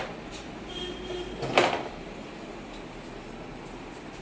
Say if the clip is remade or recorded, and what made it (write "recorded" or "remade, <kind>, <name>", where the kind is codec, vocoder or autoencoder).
remade, vocoder, BigVGAN v2